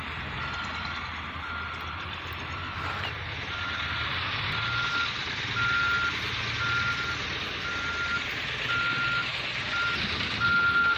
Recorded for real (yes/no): yes